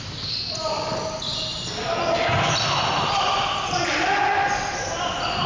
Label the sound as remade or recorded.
recorded